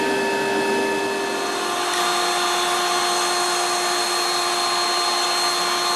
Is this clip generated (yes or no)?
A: no